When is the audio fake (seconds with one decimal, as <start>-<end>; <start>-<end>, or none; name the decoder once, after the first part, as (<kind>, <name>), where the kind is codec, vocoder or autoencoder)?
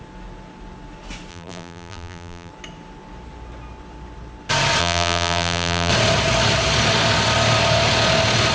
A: 1.3-2.5 (vocoder, BigVGAN v2); 4.8-5.9